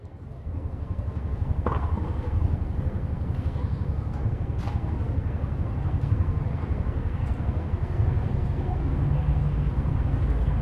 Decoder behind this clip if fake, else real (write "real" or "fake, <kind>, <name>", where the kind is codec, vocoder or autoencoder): fake, codec, SNAC